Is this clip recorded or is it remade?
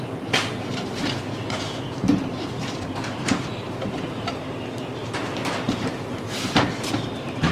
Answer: remade